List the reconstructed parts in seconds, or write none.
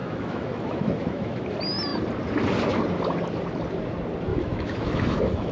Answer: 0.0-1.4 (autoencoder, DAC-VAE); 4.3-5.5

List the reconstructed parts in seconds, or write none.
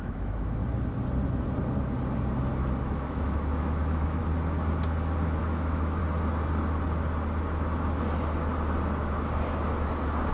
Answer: 0.0-0.6 (autoencoder, DAC-VAE); 2.8-4.2; 5.4-6.0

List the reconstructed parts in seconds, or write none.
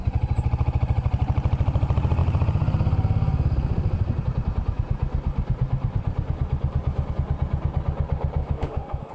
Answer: 8.4-9.1 (autoencoder, DAC-VAE)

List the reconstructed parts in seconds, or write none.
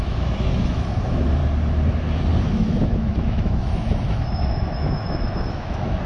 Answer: 0.0-1.4 (autoencoder, DAC-VAE); 2.4-6.1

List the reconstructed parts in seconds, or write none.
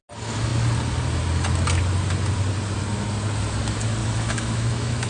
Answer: 4.0-5.1 (autoencoder, DAC-VAE)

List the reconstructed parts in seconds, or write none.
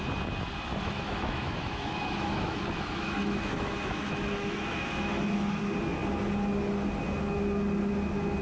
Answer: 0.7-5.6 (autoencoder, DAC-VAE)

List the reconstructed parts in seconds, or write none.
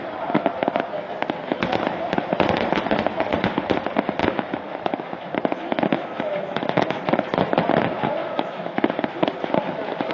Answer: 4.2-7.0 (autoencoder, DAC-VAE); 8.2-8.8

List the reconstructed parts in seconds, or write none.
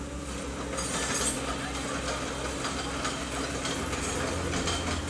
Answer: none